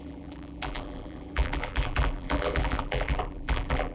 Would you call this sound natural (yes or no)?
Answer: no